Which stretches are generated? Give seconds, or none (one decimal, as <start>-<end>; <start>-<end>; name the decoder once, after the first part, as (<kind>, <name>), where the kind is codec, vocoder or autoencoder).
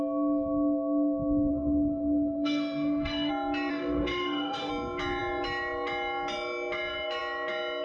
1.5-3.3 (autoencoder, DAC-VAE); 3.7-4.7